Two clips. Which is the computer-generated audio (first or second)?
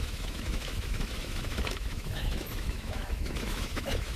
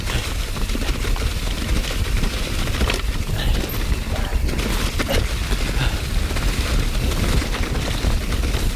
first